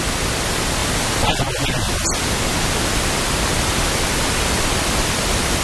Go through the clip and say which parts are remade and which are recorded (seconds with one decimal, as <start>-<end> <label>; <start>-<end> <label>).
0.0-5.6 recorded